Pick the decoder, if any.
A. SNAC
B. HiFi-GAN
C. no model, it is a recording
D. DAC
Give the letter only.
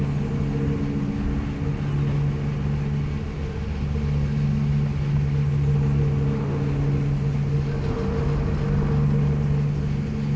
C